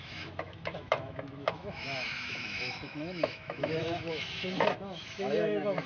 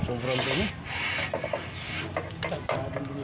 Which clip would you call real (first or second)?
second